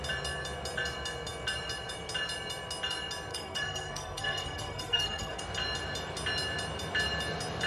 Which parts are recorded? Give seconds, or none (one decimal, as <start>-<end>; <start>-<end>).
0.0-3.3; 5.4-7.7